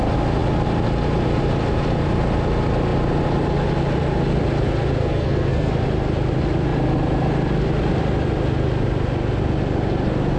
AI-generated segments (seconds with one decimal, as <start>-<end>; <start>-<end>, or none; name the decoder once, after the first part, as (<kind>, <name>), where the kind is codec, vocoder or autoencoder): 5.0-5.7 (codec, SNAC)